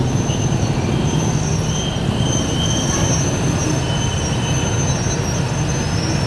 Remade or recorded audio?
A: recorded